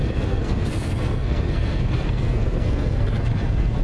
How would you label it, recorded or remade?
remade